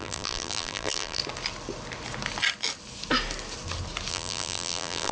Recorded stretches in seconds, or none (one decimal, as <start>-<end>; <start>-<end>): 1.2-4.1